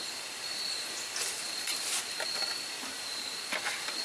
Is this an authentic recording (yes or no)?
no